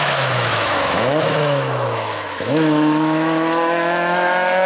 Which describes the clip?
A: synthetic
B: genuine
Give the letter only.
A